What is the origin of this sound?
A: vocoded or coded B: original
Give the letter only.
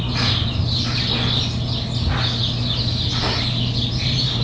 B